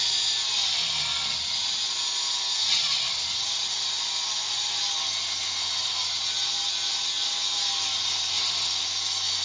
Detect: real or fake real